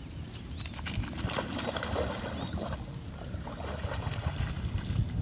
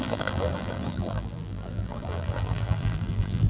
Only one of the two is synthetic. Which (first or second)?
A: second